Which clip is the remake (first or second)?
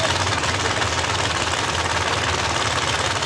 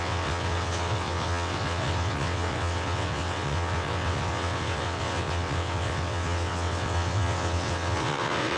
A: second